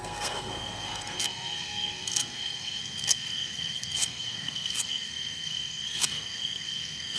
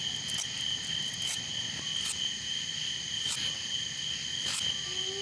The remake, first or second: first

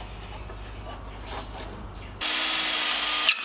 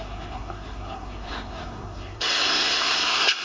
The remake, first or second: second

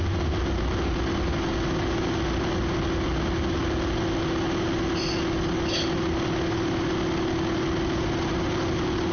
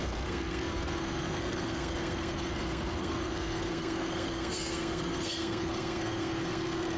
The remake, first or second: second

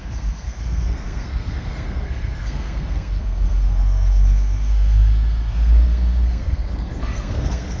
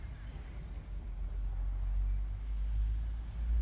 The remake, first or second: first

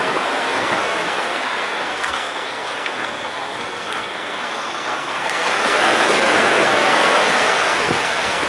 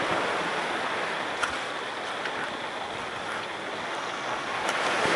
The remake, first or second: first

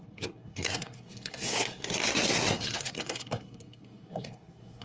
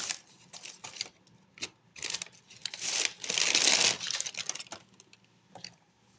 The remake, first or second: first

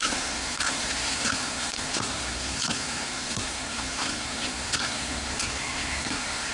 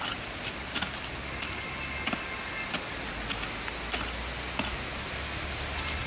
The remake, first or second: first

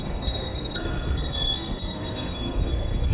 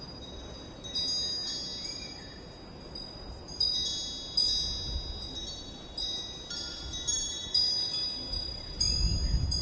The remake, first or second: first